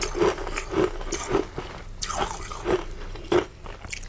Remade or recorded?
recorded